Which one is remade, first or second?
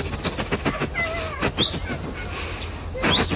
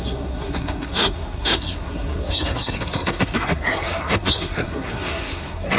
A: second